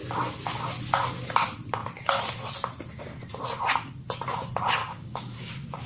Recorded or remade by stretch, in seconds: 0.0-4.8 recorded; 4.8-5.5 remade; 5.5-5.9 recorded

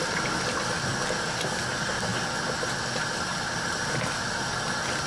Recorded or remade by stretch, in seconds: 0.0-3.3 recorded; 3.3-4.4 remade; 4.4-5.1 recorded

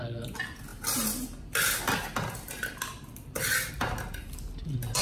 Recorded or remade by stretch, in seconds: 0.0-5.0 recorded

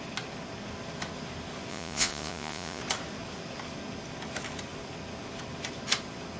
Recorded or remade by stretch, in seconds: 0.0-1.7 recorded; 1.7-2.8 remade; 2.8-6.4 recorded

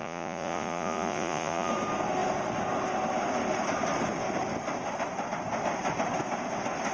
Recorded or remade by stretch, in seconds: 0.0-1.7 remade; 1.7-6.9 recorded

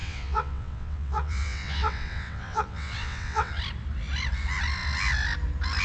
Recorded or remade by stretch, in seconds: 0.0-3.5 remade; 3.5-5.8 recorded

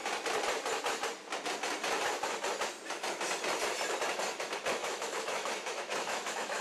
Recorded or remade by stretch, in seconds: 0.0-4.8 recorded; 4.8-6.6 remade

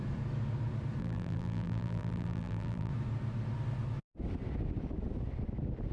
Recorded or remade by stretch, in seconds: 0.0-1.0 recorded; 1.0-2.9 remade; 2.9-5.9 recorded